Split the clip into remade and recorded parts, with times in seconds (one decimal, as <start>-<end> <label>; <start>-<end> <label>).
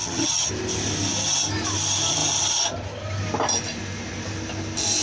0.0-0.5 remade; 0.5-5.0 recorded